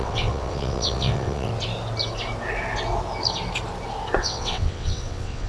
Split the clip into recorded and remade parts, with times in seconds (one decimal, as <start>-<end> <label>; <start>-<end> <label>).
0.0-1.5 remade; 1.5-4.2 recorded; 4.2-5.5 remade